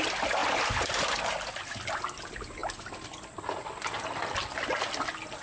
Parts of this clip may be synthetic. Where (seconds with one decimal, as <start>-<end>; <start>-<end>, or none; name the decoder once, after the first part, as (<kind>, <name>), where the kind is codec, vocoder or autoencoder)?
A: none